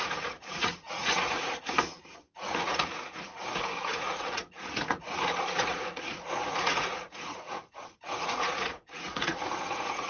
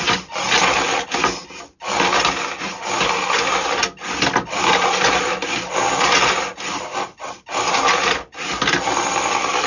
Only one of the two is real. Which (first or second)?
second